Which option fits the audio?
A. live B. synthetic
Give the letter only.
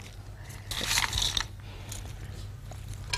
A